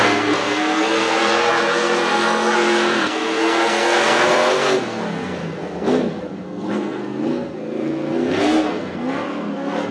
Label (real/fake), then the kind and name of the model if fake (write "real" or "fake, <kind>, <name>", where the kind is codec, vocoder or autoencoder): fake, codec, SNAC